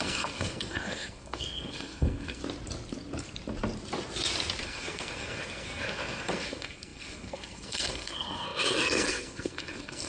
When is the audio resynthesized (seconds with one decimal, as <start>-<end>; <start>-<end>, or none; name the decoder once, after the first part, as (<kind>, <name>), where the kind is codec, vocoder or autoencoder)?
0.0-2.4 (codec, SNAC); 4.6-10.1